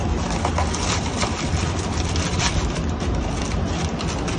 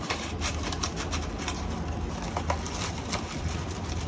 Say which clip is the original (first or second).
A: second